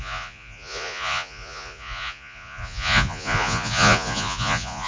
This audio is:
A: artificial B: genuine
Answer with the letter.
A